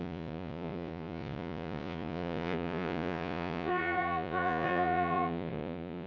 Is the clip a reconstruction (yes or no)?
yes